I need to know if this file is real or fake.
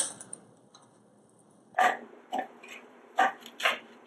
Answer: fake